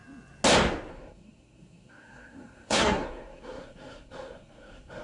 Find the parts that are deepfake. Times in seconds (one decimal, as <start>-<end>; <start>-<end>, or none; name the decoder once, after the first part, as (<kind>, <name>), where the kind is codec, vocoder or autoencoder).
0.9-5.0 (codec, SNAC)